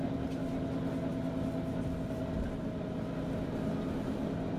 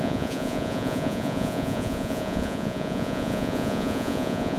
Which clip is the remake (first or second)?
second